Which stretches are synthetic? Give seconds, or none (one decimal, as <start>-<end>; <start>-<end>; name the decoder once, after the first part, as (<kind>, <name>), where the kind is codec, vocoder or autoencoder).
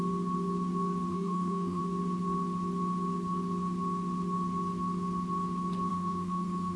1.1-1.8 (autoencoder, DAC-VAE); 5.9-6.8